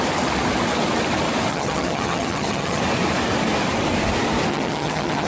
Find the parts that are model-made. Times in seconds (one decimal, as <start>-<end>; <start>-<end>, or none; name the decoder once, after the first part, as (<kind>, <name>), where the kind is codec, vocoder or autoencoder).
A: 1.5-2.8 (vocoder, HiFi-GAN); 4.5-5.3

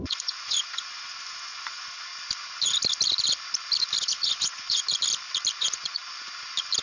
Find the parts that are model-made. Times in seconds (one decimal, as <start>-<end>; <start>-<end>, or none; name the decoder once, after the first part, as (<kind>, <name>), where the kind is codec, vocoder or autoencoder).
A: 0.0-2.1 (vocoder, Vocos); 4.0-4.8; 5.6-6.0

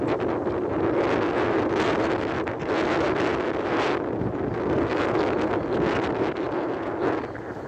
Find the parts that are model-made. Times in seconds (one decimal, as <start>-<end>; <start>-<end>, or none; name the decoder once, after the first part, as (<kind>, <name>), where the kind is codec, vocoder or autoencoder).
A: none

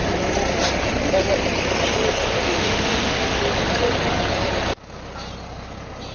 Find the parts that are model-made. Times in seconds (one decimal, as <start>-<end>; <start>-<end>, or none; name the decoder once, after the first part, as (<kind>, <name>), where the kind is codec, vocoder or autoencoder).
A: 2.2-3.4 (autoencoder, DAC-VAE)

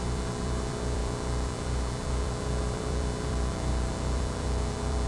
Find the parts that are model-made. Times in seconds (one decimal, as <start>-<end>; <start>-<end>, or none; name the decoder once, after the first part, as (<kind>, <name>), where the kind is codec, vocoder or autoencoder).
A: 0.0-5.1 (vocoder, BigVGAN v2)

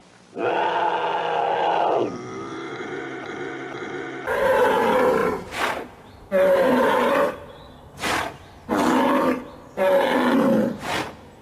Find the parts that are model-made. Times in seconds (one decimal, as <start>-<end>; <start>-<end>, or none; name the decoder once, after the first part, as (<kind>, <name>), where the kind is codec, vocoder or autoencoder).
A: 2.5-3.3 (vocoder, BigVGAN v2); 5.2-7.3

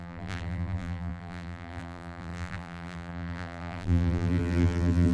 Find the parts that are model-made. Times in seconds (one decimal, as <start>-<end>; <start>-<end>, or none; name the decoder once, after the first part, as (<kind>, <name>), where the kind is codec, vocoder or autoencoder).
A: 0.0-5.1 (vocoder, BigVGAN v2)

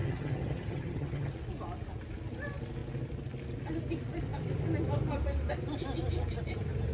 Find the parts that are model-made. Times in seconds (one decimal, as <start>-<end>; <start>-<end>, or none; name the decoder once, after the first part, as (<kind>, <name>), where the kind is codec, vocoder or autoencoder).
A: 0.0-1.3 (vocoder, HiFi-GAN)